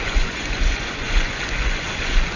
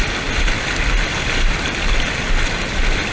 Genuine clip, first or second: second